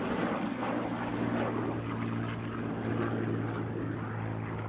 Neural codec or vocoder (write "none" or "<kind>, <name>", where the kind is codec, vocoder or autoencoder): none